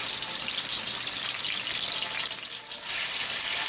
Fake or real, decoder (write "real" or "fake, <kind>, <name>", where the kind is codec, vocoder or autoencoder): real